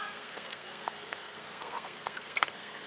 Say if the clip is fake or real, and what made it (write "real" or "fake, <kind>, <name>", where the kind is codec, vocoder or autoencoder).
fake, codec, SNAC